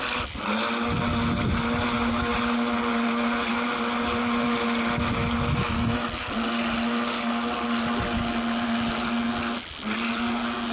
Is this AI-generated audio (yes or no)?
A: no